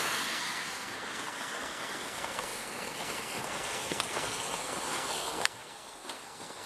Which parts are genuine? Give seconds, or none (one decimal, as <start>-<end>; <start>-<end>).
none